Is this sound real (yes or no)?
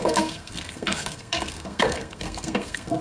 no